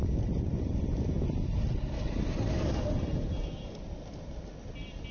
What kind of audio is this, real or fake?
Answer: real